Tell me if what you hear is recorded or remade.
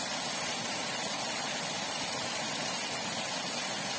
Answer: recorded